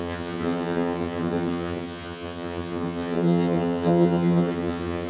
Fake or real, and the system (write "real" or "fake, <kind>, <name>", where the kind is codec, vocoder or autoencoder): fake, vocoder, HiFi-GAN